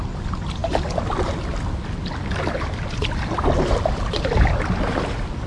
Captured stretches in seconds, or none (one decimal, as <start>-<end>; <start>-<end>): 0.0-5.5